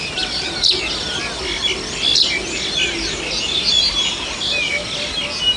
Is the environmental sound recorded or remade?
recorded